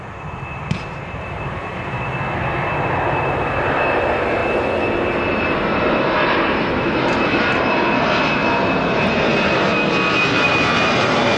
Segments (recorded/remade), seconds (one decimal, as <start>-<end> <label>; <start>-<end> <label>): 0.0-2.1 remade; 2.1-2.8 recorded; 2.8-4.4 remade; 4.4-5.2 recorded; 5.2-11.4 remade